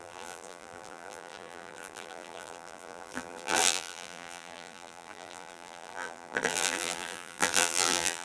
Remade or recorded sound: remade